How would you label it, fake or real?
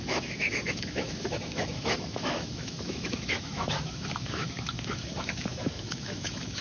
fake